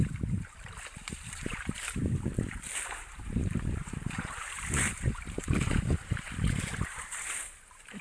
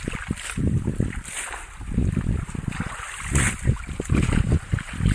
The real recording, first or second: second